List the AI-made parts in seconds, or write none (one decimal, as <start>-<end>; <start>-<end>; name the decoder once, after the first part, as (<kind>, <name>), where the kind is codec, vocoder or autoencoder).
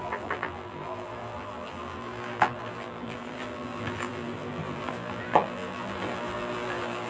0.0-7.1 (vocoder, BigVGAN v2)